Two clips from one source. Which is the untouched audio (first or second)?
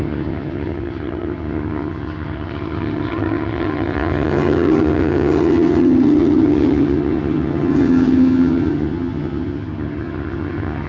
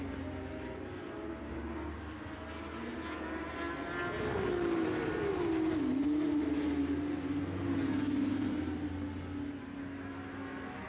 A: second